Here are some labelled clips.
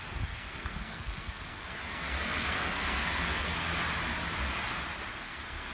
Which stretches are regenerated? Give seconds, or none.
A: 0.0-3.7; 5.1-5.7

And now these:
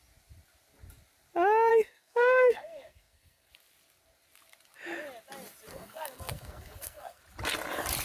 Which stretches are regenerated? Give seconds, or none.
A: 1.7-3.5; 5.7-7.2